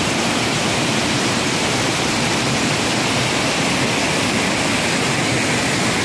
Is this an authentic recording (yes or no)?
yes